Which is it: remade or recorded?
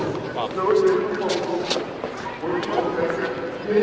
recorded